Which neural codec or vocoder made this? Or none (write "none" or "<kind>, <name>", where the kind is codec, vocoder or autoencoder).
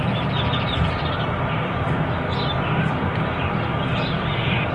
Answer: none